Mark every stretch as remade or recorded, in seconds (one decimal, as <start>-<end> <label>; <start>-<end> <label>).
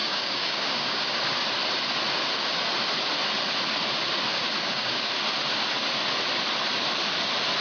0.0-1.1 remade; 1.1-4.6 recorded; 4.6-5.1 remade; 5.1-7.6 recorded